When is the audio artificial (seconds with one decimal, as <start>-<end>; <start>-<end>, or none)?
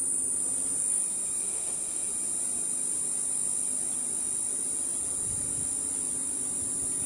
1.4-2.1